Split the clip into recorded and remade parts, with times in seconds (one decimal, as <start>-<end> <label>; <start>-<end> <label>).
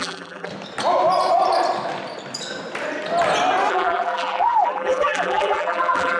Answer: 0.0-0.5 remade; 0.5-3.7 recorded; 3.7-6.2 remade